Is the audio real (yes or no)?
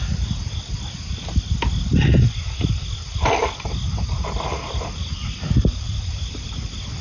yes